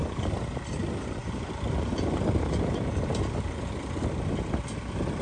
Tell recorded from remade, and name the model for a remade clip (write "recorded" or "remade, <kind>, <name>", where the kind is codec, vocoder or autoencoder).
recorded